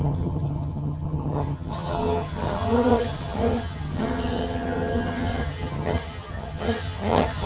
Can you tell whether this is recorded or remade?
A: remade